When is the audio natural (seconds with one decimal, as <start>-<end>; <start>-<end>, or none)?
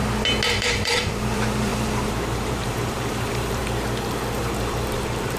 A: 0.0-0.6; 3.6-4.4